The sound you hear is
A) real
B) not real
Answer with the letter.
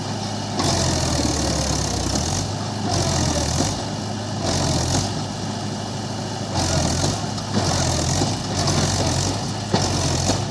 A